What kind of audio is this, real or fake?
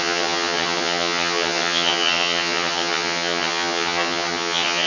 fake